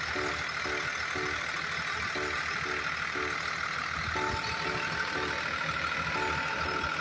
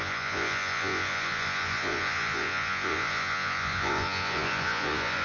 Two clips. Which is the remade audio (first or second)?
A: second